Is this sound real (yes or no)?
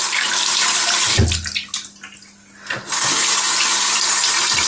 yes